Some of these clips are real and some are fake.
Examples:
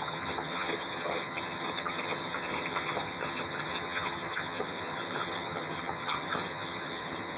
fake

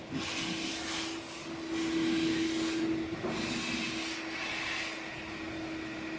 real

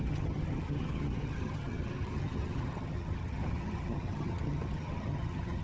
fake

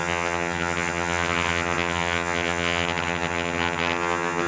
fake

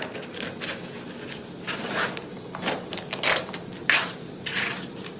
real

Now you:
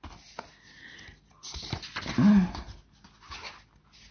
real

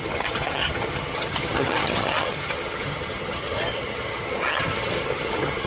fake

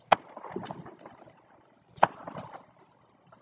real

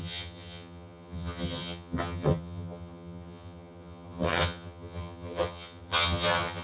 fake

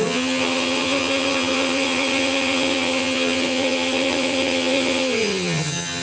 fake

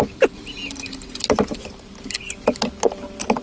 real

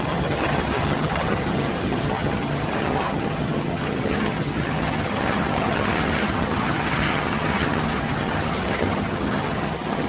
fake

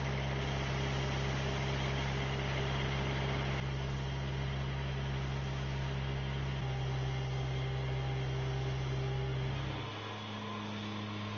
real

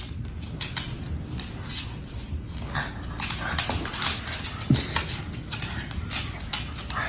real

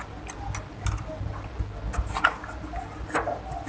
real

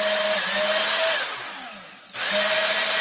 real